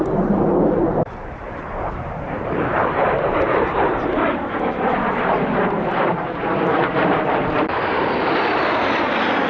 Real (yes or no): no